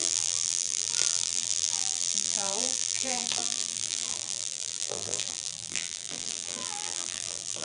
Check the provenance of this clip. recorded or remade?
remade